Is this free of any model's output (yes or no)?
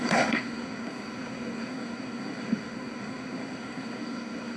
no